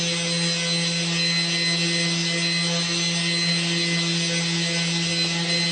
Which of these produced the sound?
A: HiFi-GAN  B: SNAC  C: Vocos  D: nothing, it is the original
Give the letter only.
D